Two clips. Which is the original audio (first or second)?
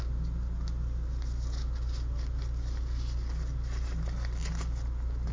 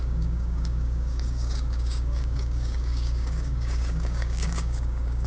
first